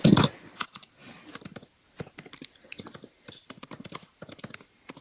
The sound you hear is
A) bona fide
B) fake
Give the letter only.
A